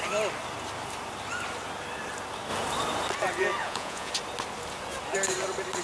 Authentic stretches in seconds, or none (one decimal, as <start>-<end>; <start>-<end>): 0.0-3.6; 4.1-5.8